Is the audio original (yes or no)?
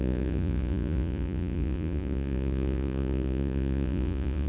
no